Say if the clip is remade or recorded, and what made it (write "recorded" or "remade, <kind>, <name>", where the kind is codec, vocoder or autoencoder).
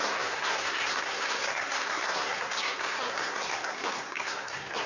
remade, codec, SNAC